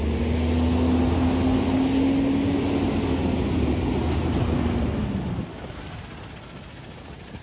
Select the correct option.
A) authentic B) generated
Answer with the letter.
A